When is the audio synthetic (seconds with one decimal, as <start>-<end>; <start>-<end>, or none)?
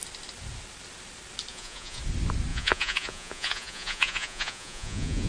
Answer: 1.5-2.0; 2.5-5.3